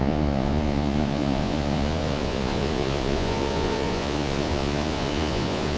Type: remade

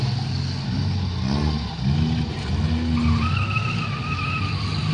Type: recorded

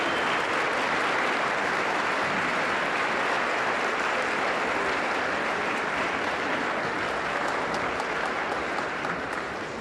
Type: recorded